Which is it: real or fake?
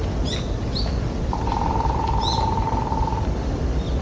fake